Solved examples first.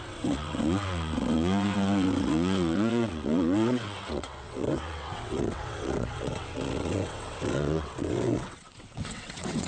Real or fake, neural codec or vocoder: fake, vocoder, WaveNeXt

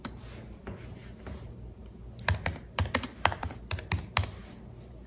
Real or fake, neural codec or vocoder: real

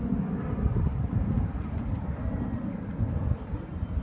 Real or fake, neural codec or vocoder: real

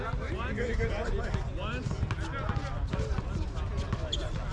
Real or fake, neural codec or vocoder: real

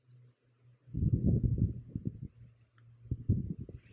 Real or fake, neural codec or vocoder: real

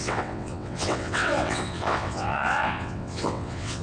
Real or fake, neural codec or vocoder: fake, vocoder, WaveNeXt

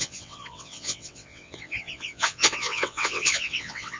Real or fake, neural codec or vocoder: fake, vocoder, WaveNeXt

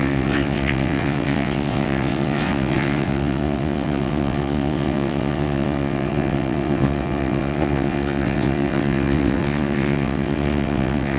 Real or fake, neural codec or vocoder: fake, vocoder, WaveNeXt